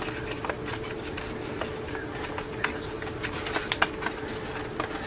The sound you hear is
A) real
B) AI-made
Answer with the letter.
A